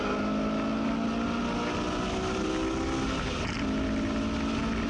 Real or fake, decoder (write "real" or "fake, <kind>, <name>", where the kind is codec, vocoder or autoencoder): real